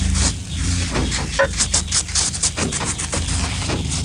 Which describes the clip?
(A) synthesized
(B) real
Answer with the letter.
B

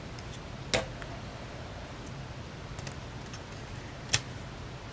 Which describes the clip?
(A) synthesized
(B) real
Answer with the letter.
B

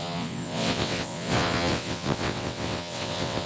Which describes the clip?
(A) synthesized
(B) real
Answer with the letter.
A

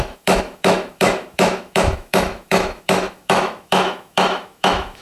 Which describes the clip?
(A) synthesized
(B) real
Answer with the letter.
A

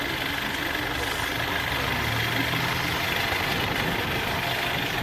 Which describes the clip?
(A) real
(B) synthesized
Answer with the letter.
A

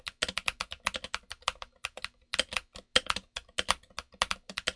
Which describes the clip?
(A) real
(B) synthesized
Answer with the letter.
A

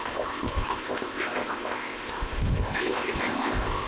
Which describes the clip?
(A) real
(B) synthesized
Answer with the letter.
B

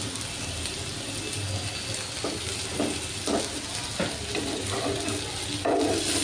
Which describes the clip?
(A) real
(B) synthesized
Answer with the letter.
A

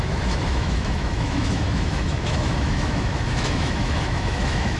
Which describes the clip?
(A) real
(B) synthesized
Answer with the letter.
B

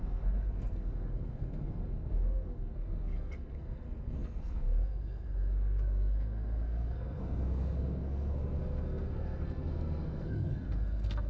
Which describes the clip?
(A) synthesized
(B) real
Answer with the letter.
A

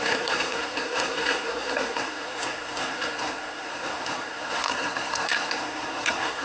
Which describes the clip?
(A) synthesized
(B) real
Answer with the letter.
A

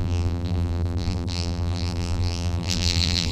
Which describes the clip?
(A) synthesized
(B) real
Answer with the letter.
A